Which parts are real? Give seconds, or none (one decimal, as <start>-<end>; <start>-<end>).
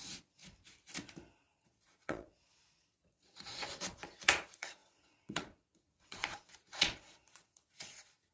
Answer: 0.4-1.5